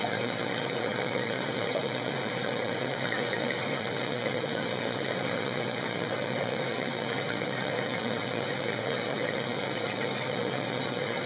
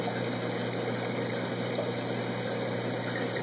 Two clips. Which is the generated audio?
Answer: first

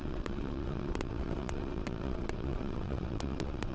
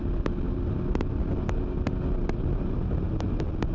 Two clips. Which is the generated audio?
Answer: first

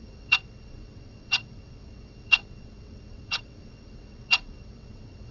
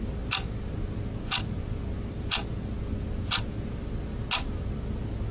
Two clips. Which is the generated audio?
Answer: first